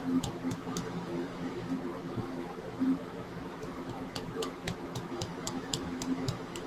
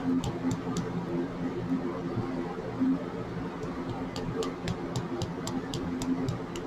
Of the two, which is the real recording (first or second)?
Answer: second